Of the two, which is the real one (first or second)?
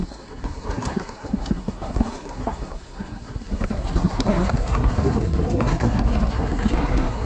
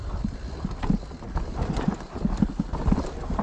second